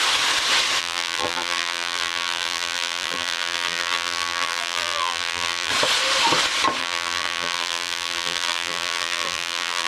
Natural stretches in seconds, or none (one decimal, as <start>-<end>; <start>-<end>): 0.0-0.8; 5.7-6.8